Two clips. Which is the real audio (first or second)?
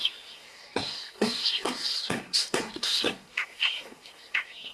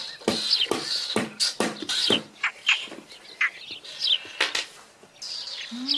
second